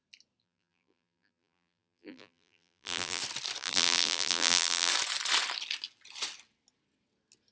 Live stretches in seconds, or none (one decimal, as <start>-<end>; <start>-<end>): 0.0-0.4; 3.2-3.6; 4.9-7.5